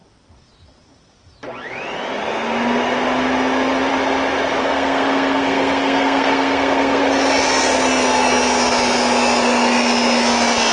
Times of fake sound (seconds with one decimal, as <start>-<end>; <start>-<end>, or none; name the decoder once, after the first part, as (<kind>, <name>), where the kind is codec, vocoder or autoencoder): 4.6-7.0 (codec, SNAC)